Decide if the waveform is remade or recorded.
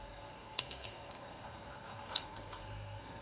remade